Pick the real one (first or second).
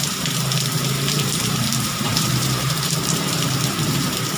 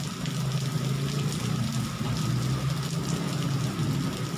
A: second